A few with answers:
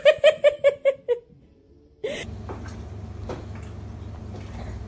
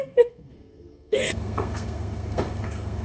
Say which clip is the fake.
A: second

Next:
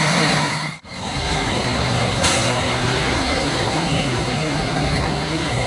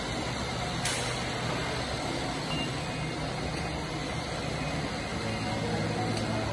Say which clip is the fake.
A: first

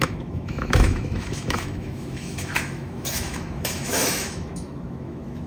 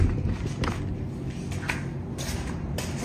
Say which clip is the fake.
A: first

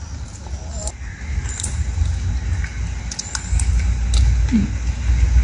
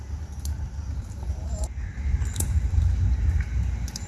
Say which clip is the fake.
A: second